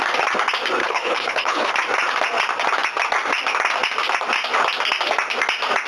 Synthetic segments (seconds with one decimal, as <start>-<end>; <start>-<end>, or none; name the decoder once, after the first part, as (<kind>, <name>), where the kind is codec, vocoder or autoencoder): 0.8-1.7 (codec, HILCodec)